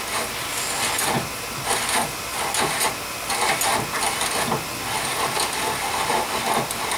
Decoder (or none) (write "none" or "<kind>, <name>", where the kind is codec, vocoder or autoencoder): none